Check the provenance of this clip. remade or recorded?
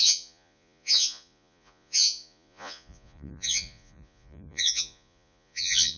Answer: remade